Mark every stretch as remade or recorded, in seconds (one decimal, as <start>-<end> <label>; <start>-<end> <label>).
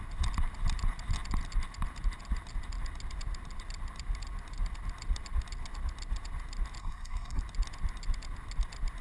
0.0-6.8 recorded; 6.8-7.4 remade; 7.4-9.0 recorded